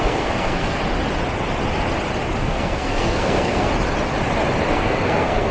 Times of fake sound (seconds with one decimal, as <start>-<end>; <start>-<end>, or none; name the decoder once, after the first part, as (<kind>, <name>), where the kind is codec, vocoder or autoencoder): 0.0-0.8 (codec, SNAC); 2.4-3.7; 4.7-5.5